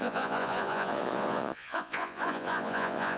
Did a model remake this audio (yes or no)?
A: yes